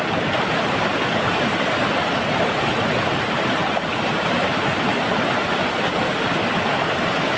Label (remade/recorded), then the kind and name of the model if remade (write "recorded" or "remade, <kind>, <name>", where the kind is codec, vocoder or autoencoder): recorded